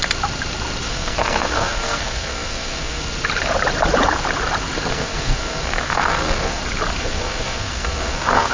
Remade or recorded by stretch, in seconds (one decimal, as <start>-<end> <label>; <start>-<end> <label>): 0.0-0.9 recorded; 0.9-3.0 remade; 3.0-4.9 recorded; 4.9-6.6 remade; 6.6-7.0 recorded; 7.0-8.5 remade

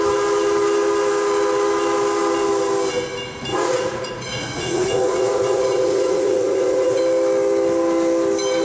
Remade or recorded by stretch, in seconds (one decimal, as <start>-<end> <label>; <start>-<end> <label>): 0.0-3.5 recorded; 3.5-7.0 remade; 7.0-8.6 recorded

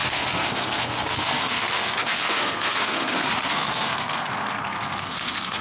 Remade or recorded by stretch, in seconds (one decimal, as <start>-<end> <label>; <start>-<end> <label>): 0.0-5.6 remade

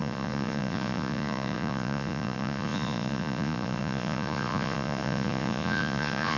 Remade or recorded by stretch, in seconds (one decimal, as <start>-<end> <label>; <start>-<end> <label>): 0.0-6.4 remade

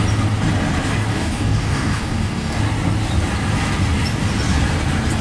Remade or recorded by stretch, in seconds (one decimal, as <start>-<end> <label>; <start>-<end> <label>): 0.0-1.1 recorded; 1.1-2.6 remade; 2.6-5.2 recorded

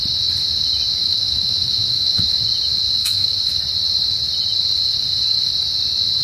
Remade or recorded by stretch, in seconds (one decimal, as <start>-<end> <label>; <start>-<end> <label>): 0.0-0.9 recorded; 0.9-2.4 remade; 2.4-3.0 recorded; 3.0-3.5 remade; 3.5-6.2 recorded

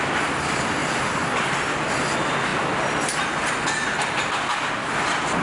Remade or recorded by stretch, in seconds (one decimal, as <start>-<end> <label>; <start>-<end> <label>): 0.0-5.4 recorded